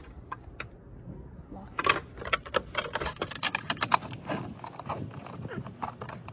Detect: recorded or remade recorded